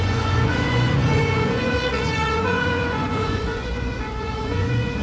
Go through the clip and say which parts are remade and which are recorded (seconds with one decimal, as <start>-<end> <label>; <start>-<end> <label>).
0.0-5.0 remade